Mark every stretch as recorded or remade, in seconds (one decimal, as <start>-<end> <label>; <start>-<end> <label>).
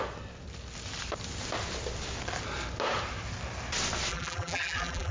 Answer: 0.0-4.1 recorded; 4.1-5.1 remade